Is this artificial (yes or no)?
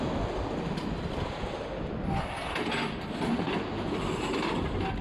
no